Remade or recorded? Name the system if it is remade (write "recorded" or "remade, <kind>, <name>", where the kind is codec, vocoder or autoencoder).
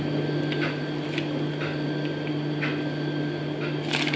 recorded